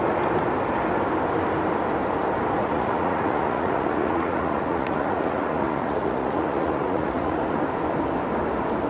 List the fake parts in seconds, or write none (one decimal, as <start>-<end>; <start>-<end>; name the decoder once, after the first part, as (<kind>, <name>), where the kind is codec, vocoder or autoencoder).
2.6-7.6 (vocoder, Vocos)